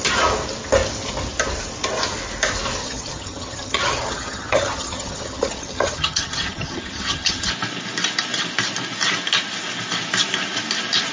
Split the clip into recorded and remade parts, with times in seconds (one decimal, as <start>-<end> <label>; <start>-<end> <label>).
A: 0.0-2.8 recorded; 2.8-7.5 remade; 7.5-11.1 recorded